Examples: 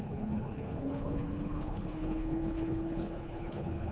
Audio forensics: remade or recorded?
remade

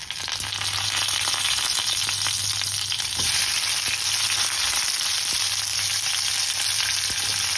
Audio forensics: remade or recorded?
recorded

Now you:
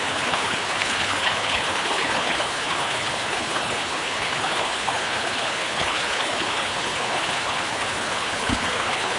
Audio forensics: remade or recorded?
remade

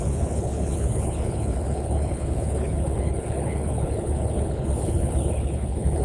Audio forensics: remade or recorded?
remade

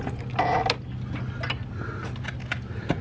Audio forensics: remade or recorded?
recorded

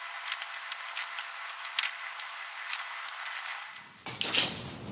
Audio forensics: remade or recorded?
recorded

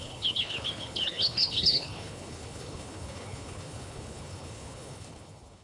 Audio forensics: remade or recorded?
remade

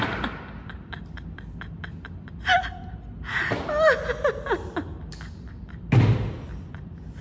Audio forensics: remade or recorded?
recorded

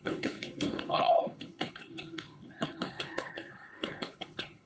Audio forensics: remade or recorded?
remade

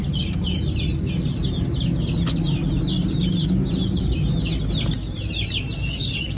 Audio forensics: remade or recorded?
recorded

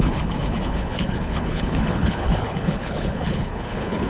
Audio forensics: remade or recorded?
remade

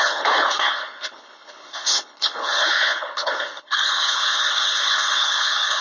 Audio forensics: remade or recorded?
remade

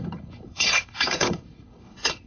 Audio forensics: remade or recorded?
remade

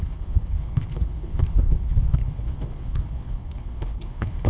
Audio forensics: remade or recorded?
remade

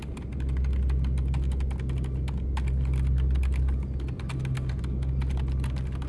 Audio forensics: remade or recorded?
recorded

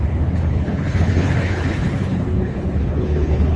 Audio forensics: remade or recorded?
remade